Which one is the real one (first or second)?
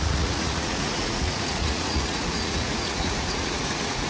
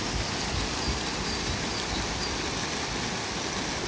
second